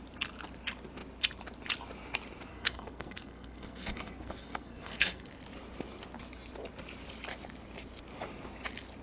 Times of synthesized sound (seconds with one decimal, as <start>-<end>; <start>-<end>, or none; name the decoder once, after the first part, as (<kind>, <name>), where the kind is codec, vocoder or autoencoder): 2.5-5.3 (codec, SNAC)